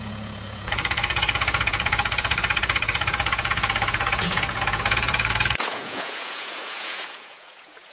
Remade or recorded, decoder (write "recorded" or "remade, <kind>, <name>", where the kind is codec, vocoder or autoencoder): remade, vocoder, Vocos